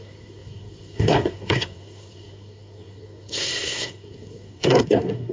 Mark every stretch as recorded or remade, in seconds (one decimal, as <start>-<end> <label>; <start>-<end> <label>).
0.0-5.3 remade

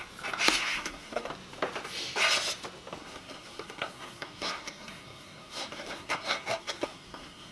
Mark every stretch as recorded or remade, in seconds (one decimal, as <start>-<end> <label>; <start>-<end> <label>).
0.0-0.6 recorded; 0.6-1.3 remade; 1.3-3.0 recorded; 3.0-7.5 remade